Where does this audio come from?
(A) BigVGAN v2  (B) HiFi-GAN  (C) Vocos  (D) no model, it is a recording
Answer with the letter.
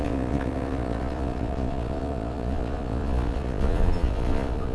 C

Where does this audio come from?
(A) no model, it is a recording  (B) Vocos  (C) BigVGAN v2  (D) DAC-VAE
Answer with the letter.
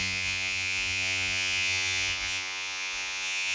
B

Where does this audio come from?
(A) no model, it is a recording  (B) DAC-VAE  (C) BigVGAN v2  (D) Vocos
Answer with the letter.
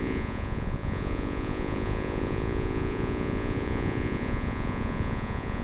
D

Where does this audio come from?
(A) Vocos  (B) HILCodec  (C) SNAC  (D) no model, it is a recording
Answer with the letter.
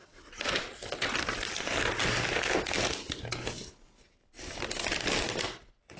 D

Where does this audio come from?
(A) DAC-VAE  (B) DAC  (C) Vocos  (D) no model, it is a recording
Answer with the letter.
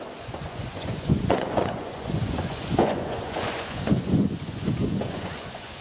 C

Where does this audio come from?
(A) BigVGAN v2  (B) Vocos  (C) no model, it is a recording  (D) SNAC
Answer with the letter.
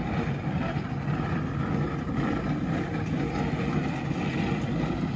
C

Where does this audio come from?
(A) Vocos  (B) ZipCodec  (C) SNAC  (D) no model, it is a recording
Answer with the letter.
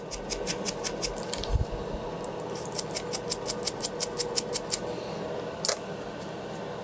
D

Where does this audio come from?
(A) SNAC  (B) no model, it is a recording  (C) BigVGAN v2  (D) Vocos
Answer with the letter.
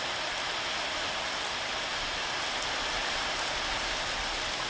B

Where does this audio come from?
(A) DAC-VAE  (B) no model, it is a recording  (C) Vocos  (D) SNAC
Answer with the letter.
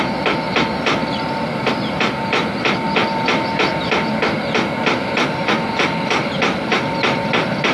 B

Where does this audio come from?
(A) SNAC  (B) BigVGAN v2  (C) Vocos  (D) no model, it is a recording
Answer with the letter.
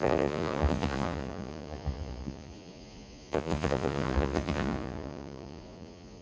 C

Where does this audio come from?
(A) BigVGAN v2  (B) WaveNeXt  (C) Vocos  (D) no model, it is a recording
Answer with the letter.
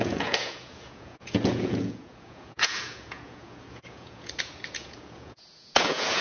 C